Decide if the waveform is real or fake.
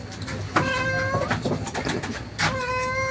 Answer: real